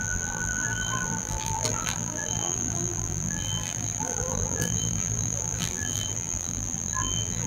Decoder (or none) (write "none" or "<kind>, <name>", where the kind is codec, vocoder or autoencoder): vocoder, BigVGAN v2